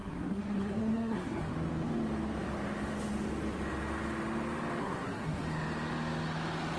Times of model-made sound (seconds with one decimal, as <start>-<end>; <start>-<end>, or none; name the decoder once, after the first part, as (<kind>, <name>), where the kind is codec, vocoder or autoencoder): 0.0-1.5 (codec, SNAC); 4.8-5.4